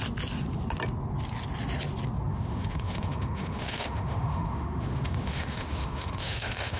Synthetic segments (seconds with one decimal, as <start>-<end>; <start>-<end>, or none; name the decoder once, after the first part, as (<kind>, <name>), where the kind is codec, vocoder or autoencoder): 2.3-6.8 (autoencoder, DAC-VAE)